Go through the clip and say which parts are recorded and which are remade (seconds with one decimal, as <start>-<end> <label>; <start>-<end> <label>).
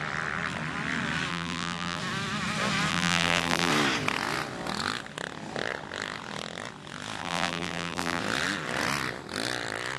0.0-1.3 recorded; 1.3-2.0 remade; 2.0-2.9 recorded; 2.9-3.7 remade; 3.7-7.2 recorded; 7.2-8.2 remade; 8.2-10.0 recorded